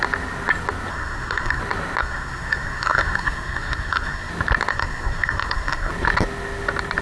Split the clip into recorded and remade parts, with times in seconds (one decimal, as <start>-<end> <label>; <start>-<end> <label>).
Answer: 0.0-0.9 recorded; 0.9-1.6 remade; 1.6-2.0 recorded; 2.0-4.3 remade; 4.3-4.7 recorded; 4.7-5.9 remade; 5.9-7.0 recorded